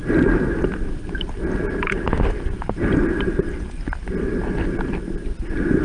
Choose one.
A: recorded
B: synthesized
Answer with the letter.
A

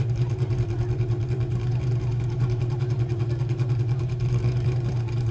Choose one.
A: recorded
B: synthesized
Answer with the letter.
B